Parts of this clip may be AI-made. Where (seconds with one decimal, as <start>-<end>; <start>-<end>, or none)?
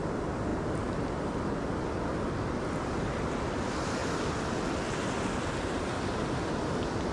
none